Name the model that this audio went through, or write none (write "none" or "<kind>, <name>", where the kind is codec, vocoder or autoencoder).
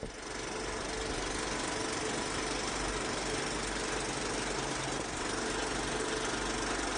none